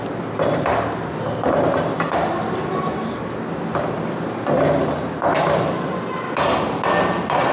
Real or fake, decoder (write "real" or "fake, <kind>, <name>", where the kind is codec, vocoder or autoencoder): real